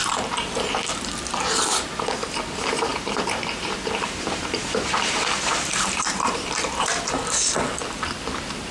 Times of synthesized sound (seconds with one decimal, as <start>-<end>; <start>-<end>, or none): 2.9-7.0